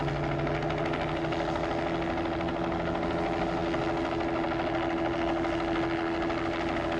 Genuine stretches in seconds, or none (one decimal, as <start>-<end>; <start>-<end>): 0.0-7.0